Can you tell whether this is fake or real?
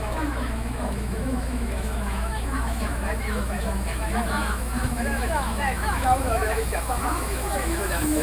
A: fake